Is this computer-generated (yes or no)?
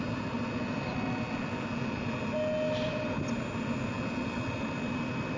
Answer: no